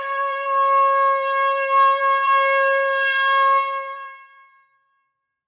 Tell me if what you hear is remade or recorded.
remade